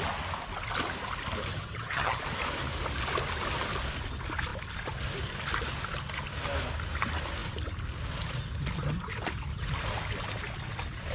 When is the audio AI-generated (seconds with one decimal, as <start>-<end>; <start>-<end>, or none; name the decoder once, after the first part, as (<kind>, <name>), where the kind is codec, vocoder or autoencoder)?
1.5-2.2 (vocoder, HiFi-GAN)